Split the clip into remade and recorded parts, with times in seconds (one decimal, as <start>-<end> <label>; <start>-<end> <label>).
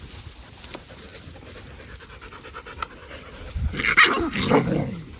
0.0-5.2 recorded